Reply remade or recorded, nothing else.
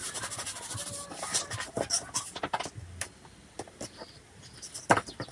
recorded